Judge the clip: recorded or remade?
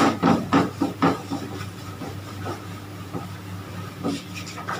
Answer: remade